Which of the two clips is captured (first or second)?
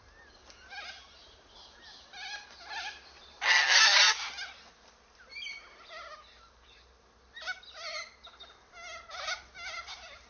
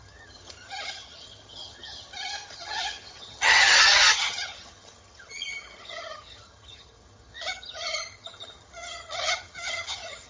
first